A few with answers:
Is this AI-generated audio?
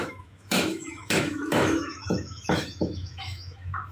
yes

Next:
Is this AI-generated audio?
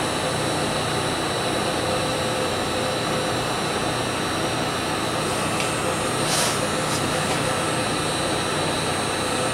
no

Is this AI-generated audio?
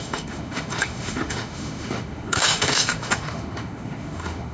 yes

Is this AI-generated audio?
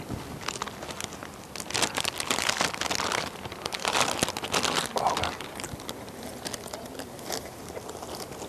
no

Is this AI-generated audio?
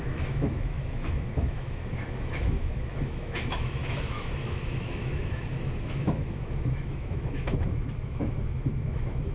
yes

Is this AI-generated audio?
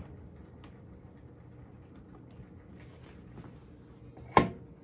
no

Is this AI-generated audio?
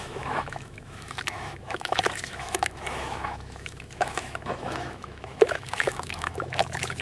yes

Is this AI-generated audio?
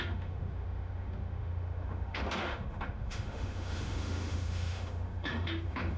yes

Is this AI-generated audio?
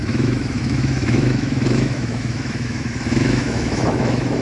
yes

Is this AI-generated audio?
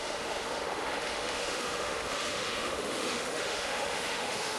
yes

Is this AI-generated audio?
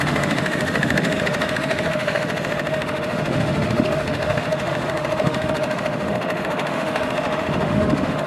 yes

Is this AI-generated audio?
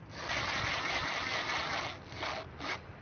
no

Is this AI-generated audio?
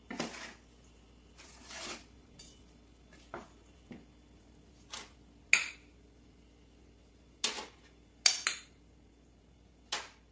no